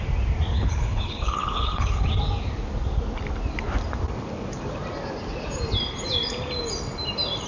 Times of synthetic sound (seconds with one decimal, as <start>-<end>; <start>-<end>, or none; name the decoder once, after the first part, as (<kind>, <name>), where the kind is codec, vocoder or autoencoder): 0.5-2.1 (codec, HILCodec)